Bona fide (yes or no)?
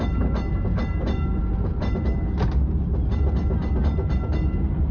yes